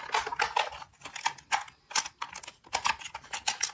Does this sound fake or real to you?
real